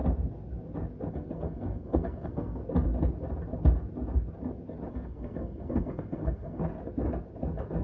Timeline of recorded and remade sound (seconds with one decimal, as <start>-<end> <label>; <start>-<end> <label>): 0.0-1.1 recorded; 1.1-2.6 remade; 2.6-4.9 recorded; 4.9-6.6 remade; 6.6-7.8 recorded